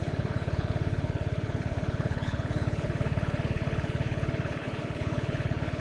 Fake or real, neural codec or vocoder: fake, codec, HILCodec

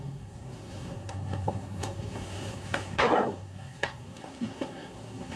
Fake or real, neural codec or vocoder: fake, codec, SNAC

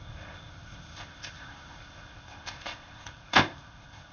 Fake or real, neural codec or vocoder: fake, codec, ZipCodec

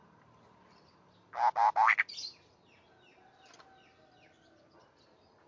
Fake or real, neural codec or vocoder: real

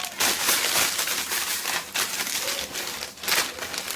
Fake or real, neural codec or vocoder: real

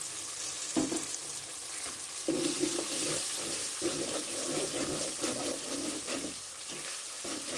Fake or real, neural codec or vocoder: real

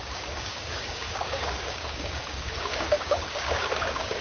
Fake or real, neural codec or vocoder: fake, codec, DAC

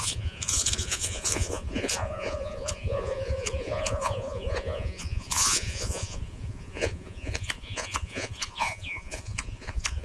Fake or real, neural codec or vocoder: fake, vocoder, Vocos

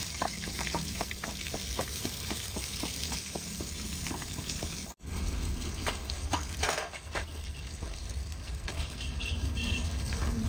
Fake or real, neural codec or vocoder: fake, codec, SNAC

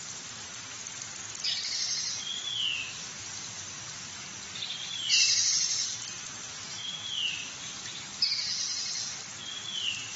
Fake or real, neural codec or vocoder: real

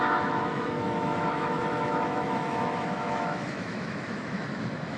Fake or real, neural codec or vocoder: fake, autoencoder, DAC-VAE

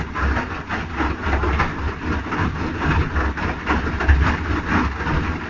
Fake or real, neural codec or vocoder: real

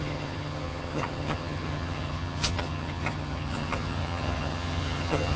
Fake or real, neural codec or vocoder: fake, vocoder, HiFi-GAN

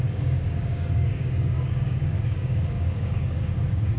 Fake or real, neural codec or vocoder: fake, codec, DAC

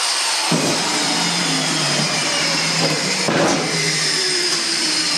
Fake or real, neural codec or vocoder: fake, vocoder, BigVGAN v2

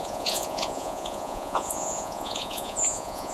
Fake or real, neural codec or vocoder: fake, vocoder, Vocos